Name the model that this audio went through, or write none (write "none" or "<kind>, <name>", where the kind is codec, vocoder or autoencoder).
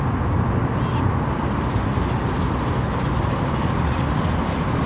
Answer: none